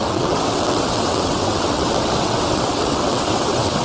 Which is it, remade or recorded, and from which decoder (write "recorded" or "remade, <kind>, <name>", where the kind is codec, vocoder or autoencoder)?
remade, vocoder, WaveNeXt